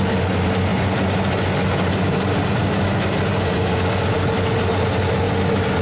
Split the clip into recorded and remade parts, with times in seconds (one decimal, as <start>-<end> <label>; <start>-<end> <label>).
0.0-5.8 recorded